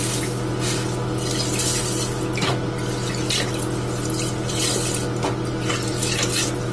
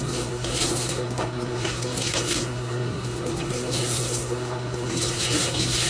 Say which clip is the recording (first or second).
first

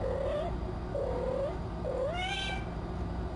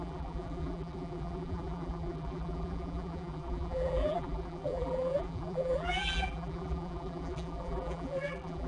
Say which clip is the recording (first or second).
first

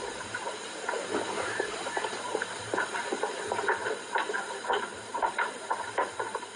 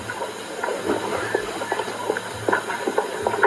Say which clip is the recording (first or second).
second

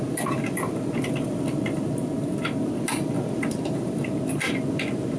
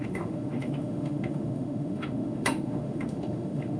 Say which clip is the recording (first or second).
first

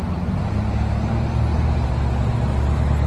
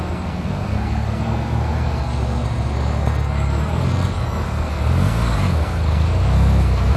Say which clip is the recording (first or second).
first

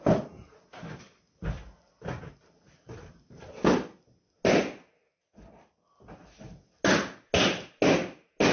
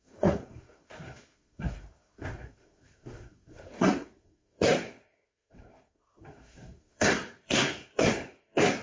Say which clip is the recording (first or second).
first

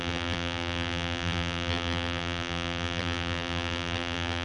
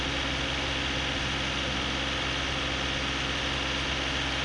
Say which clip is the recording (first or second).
second